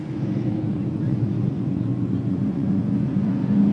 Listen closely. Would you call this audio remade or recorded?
remade